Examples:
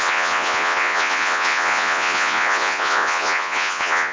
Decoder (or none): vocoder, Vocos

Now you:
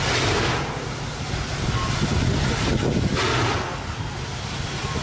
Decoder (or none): none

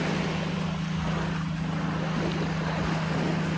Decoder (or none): none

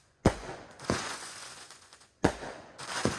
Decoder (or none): vocoder, Vocos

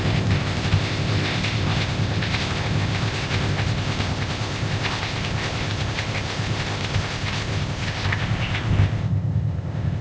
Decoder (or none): codec, ZipCodec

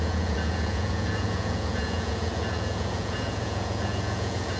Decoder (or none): vocoder, Vocos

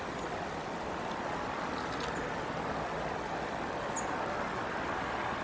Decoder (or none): none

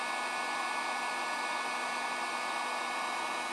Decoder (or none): none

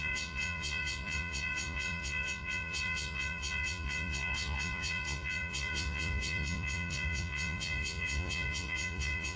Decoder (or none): vocoder, Vocos